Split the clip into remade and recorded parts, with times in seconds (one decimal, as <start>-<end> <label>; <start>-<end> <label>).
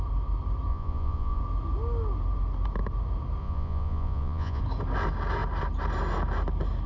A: 0.0-0.7 recorded; 0.7-1.4 remade; 1.4-3.4 recorded; 3.4-4.6 remade; 4.6-6.9 recorded